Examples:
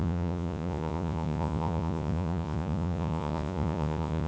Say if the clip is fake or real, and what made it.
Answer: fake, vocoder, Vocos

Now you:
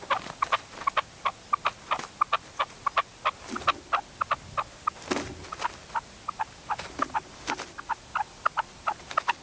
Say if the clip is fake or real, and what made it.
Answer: real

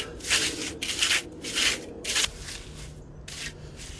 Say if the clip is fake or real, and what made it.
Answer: real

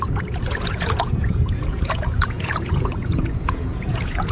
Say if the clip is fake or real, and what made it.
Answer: fake, vocoder, Vocos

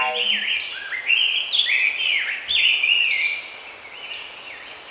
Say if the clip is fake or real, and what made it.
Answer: real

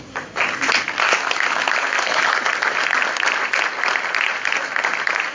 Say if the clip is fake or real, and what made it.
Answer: real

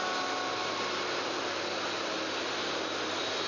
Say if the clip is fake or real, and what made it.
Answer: real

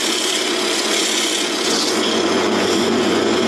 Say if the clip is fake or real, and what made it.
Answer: fake, vocoder, Vocos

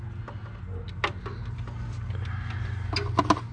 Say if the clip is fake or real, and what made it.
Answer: real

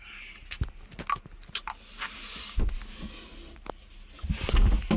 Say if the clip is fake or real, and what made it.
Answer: real